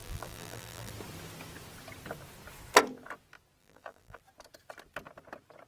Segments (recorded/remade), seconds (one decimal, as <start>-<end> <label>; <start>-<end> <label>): 0.0-0.9 remade; 0.9-3.6 recorded; 3.6-4.2 remade; 4.2-5.7 recorded